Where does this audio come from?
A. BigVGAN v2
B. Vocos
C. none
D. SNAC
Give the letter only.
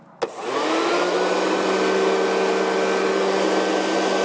C